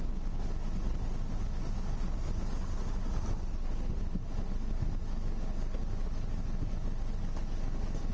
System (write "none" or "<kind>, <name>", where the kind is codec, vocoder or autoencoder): none